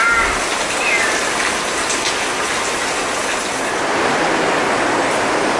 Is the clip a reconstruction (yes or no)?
no